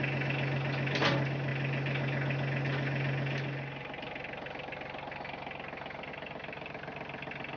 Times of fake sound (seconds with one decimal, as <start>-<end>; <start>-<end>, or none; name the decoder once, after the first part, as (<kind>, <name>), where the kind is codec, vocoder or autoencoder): none